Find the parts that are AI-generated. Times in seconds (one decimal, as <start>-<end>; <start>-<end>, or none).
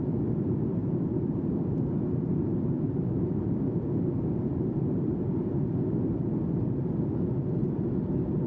0.8-1.4